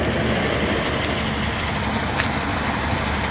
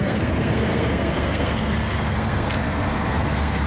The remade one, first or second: second